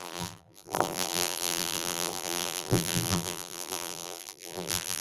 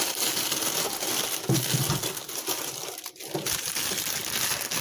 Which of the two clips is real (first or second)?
second